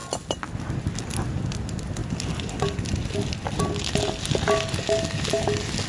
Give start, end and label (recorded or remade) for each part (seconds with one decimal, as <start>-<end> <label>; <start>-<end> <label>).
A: 0.0-5.9 recorded